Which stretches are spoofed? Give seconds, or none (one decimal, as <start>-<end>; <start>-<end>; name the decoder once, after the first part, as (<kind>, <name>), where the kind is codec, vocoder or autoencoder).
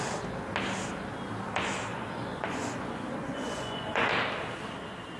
1.9-4.1 (vocoder, Vocos)